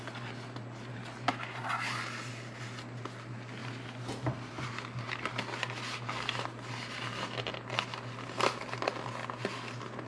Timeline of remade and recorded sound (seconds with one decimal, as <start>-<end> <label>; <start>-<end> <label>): 0.0-10.1 recorded